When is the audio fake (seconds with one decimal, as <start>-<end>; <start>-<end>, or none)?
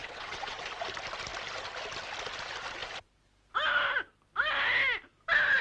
0.0-0.6